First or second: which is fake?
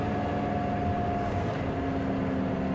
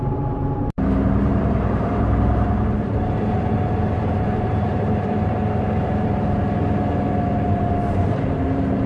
second